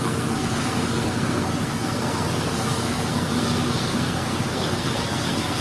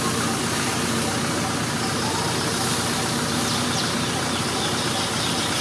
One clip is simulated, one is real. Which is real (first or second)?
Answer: second